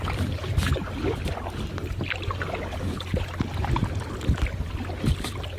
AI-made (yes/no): no